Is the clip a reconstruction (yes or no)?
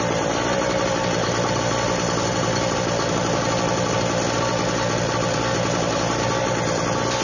no